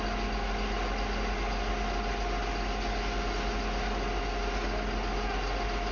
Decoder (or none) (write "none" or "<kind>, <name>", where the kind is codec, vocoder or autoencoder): none